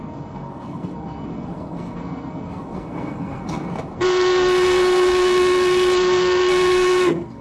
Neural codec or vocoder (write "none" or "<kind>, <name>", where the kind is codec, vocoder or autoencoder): codec, SNAC